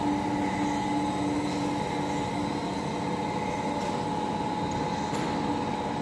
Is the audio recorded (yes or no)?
yes